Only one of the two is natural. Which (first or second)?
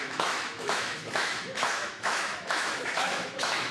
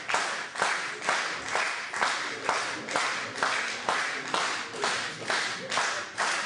second